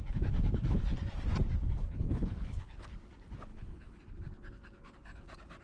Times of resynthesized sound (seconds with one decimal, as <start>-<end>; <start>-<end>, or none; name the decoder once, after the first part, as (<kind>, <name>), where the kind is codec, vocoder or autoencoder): 1.8-2.7 (codec, HILCodec); 3.5-4.0